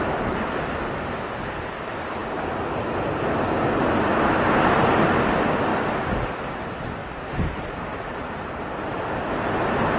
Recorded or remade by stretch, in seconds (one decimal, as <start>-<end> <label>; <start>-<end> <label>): 0.0-5.7 recorded; 5.7-6.3 remade; 6.3-7.0 recorded; 7.0-8.8 remade; 8.8-10.0 recorded